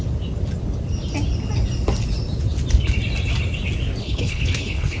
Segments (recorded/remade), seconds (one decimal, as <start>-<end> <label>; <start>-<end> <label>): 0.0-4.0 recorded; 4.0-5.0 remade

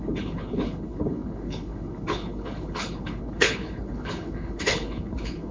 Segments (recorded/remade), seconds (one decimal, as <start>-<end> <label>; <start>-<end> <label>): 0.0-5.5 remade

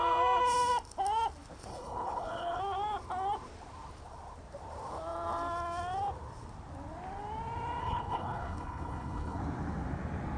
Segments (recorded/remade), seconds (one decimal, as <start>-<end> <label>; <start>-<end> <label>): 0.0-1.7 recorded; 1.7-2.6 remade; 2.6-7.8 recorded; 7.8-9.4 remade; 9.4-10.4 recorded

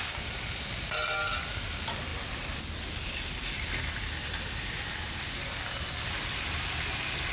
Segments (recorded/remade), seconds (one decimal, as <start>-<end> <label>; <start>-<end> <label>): 0.0-7.3 recorded